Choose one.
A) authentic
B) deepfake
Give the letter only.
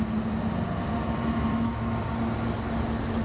A